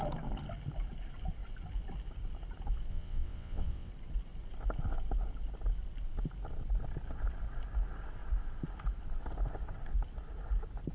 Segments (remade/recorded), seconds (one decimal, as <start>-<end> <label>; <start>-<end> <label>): 0.0-2.9 recorded; 2.9-3.9 remade; 3.9-10.9 recorded